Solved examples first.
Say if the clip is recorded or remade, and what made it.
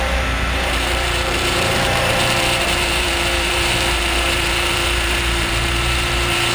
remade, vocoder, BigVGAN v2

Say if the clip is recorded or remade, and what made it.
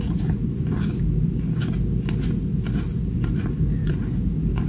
recorded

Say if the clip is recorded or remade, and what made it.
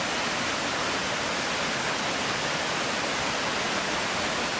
recorded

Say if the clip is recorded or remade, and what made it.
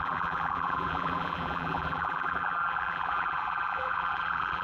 remade, vocoder, BigVGAN v2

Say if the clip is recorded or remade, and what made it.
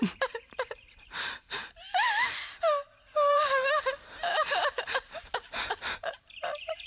remade, vocoder, BigVGAN v2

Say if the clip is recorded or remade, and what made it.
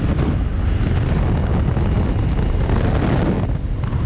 recorded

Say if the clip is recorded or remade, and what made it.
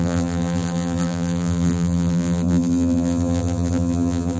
remade, vocoder, BigVGAN v2